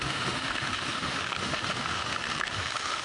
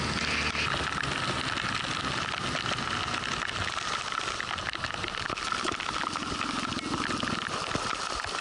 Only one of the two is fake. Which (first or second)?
first